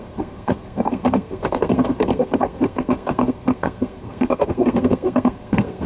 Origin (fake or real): fake